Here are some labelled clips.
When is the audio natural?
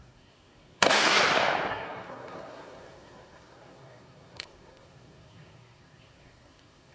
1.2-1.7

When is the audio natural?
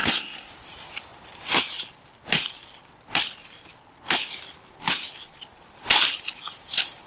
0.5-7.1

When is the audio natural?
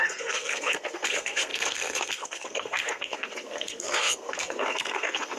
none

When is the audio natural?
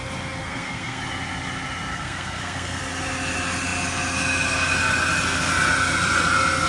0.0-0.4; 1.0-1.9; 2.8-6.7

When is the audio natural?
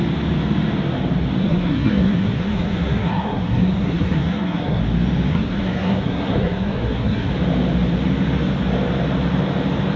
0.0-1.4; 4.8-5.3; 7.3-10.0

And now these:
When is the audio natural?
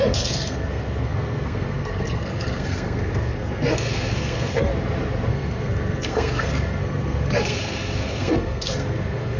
4.7-5.3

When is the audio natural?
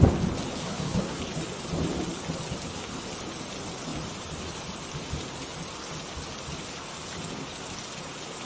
0.0-0.6; 1.2-8.5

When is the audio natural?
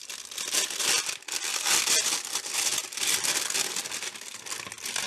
0.0-5.1